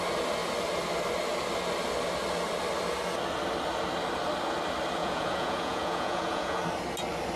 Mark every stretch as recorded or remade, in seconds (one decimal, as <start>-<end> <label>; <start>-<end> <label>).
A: 0.0-5.0 recorded; 5.0-6.6 remade; 6.6-7.4 recorded